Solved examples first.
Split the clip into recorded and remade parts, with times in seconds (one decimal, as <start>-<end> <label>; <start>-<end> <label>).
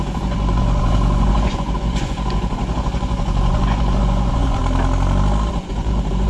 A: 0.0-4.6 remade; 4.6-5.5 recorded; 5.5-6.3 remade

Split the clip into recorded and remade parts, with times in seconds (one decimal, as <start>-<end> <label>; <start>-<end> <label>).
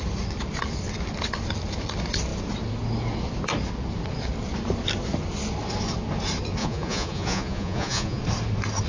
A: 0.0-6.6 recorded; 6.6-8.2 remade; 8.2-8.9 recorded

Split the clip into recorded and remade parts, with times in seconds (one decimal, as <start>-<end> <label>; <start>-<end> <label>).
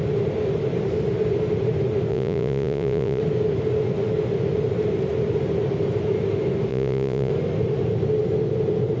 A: 0.0-2.1 recorded; 2.1-3.2 remade; 3.2-6.7 recorded; 6.7-7.3 remade; 7.3-9.0 recorded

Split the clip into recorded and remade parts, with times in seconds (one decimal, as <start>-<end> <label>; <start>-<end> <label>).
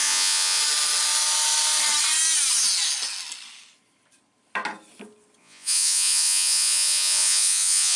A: 0.0-0.6 remade; 0.6-5.4 recorded; 5.4-8.0 remade